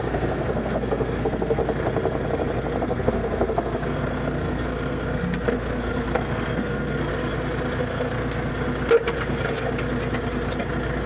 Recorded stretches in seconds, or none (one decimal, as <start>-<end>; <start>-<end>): 1.6-2.8; 7.1-7.8; 8.5-11.1